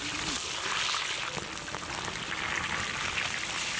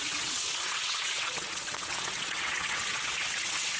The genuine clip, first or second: first